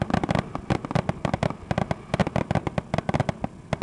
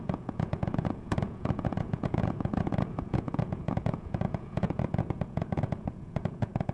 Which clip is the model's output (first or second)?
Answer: second